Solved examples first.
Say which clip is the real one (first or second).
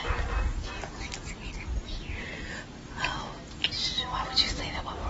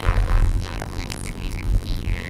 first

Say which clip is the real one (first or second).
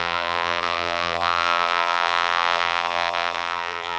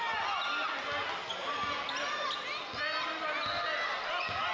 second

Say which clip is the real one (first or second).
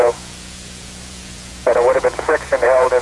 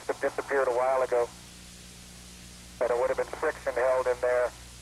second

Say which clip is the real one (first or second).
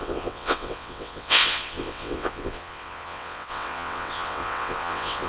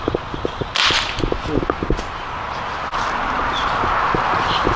second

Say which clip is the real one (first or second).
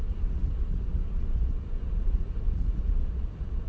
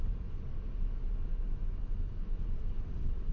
second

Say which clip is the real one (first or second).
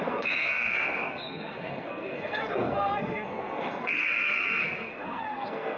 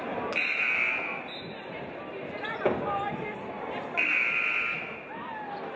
second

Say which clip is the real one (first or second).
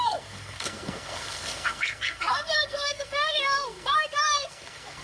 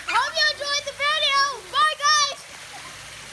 second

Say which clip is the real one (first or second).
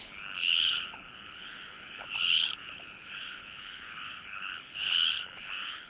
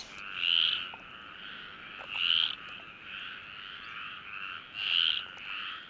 second